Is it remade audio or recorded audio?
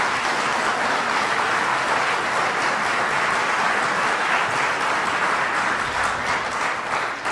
recorded